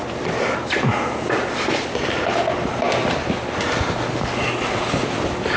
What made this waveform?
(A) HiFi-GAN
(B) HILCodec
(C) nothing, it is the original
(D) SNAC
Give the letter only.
C